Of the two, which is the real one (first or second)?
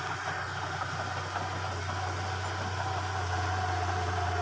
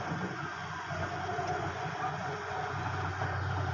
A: first